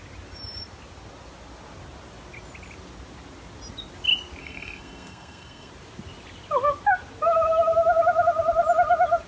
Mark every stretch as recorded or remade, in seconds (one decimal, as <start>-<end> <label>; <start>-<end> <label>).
0.0-4.4 recorded; 4.4-5.7 remade; 5.7-9.3 recorded